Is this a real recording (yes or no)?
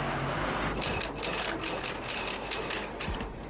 yes